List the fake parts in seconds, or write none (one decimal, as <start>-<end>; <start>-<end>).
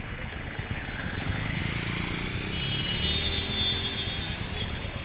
0.0-1.6; 4.6-5.0